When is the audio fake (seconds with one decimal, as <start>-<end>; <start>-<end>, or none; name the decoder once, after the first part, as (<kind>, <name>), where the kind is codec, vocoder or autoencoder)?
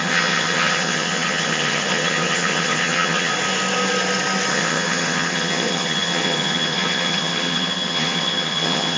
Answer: 0.0-3.3 (vocoder, HiFi-GAN); 4.5-9.0